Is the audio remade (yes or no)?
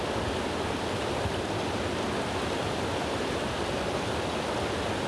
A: no